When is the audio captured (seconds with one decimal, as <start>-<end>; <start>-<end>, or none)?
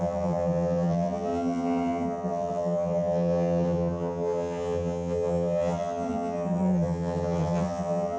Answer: none